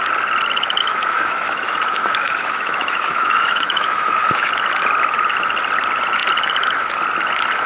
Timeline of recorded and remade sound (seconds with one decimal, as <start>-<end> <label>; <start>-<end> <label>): 0.0-0.8 recorded; 0.8-4.5 remade; 4.5-7.7 recorded